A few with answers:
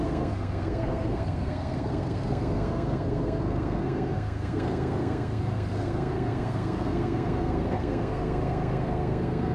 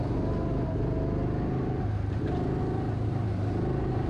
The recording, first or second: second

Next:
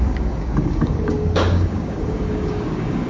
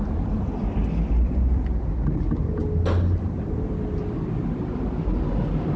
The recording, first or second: second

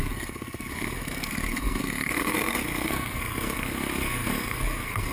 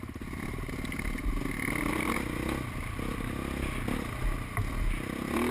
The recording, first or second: second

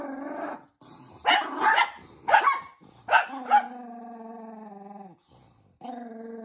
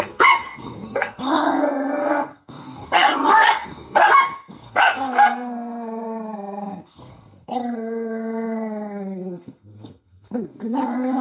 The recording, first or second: first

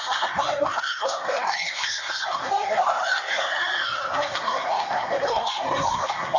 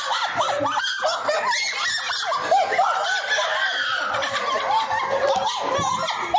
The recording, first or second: second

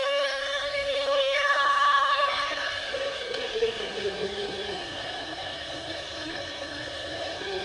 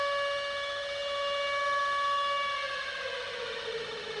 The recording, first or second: second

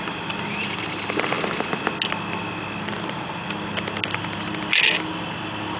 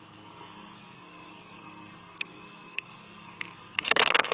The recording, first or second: first